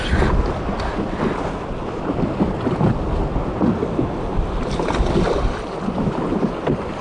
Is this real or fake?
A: real